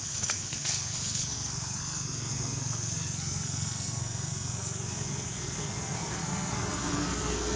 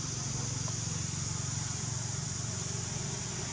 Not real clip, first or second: first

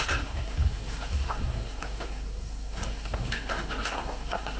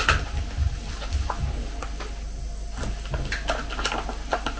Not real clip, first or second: first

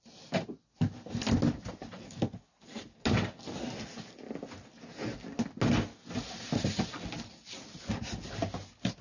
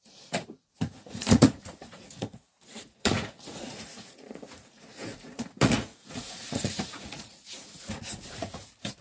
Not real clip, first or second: second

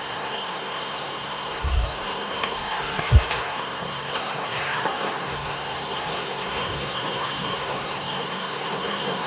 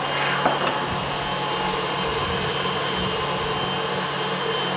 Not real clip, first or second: first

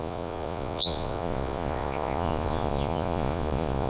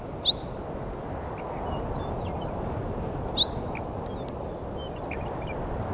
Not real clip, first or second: first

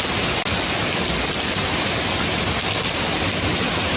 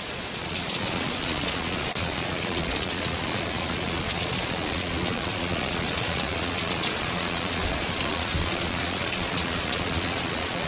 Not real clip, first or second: second